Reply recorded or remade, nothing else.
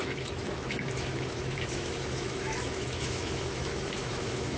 remade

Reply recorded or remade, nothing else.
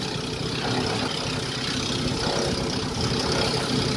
recorded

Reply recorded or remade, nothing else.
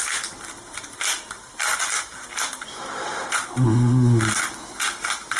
recorded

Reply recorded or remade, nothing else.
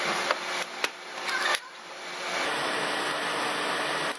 recorded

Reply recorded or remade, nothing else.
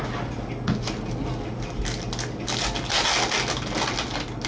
recorded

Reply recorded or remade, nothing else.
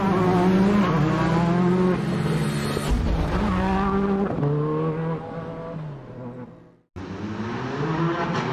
recorded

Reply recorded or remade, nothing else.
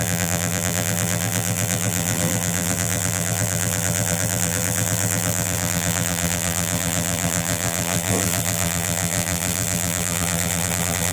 remade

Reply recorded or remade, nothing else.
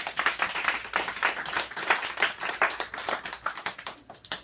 recorded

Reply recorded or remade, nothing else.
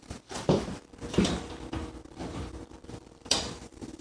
remade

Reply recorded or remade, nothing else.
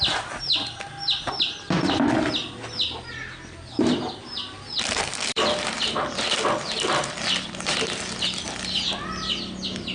recorded